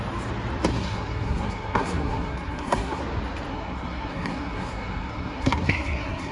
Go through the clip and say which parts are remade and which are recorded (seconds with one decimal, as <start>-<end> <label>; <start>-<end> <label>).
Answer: 0.0-0.7 recorded; 0.7-3.0 remade; 3.0-3.5 recorded; 3.5-6.3 remade